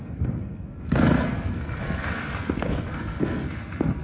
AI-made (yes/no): yes